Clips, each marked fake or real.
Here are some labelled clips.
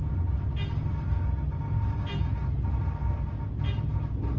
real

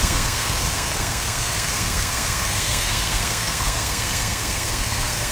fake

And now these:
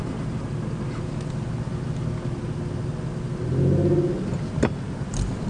real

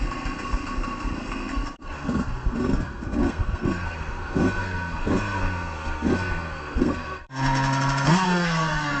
fake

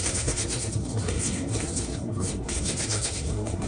fake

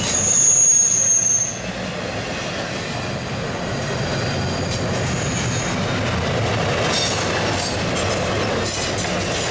real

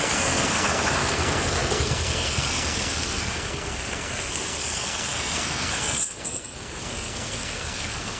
fake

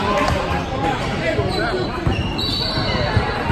real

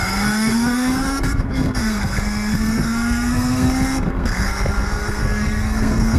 fake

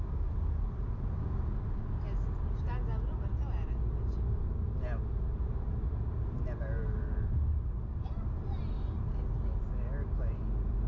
real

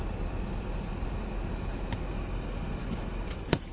real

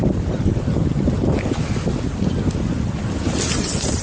real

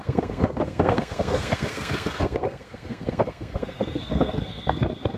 fake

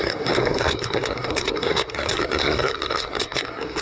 fake